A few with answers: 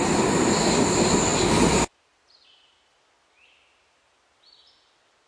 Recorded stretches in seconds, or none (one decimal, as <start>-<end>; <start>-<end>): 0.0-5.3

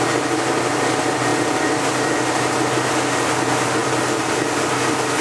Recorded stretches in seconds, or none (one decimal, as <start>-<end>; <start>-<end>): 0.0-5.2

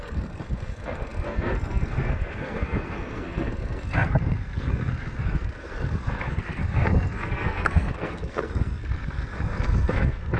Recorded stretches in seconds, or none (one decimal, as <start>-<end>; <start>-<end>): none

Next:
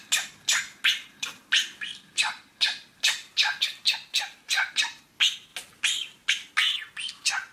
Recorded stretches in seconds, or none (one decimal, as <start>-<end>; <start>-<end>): 0.0-7.5

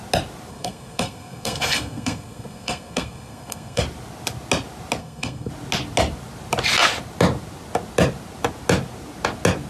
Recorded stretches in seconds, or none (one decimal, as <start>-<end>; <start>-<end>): 0.0-0.5; 3.8-5.0; 5.5-9.7

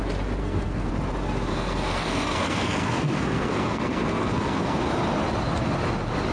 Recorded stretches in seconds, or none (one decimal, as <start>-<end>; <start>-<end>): 0.0-0.4; 0.9-1.5; 4.8-6.3

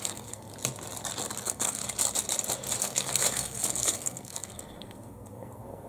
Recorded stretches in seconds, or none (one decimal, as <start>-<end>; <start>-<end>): 0.5-1.4; 1.8-2.8

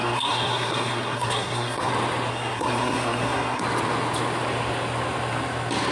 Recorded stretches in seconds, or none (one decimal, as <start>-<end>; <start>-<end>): 1.9-2.3; 3.6-5.9